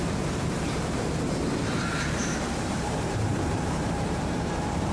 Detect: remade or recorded remade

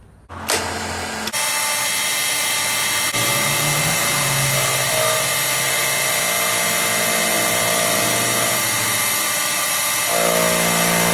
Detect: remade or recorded recorded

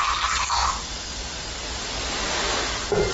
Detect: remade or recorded recorded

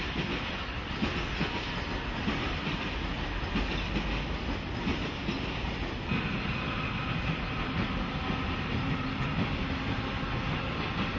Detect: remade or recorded recorded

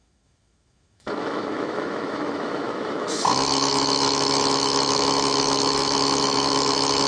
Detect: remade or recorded remade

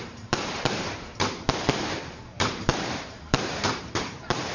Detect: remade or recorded remade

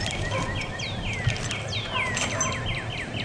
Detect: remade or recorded recorded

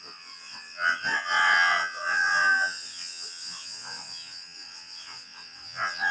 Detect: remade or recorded remade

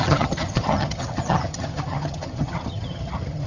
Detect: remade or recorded remade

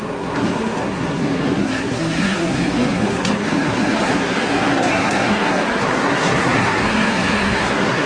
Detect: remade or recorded remade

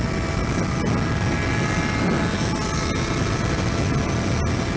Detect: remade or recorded recorded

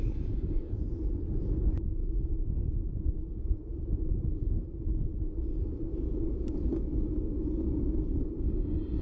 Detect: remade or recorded recorded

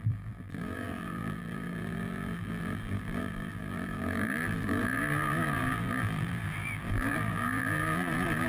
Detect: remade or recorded remade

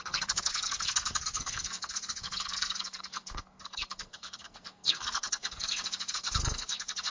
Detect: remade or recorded remade